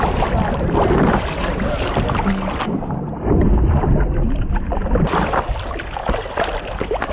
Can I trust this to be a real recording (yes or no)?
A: yes